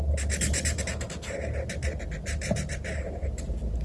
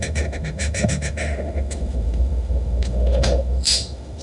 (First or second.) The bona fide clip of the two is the first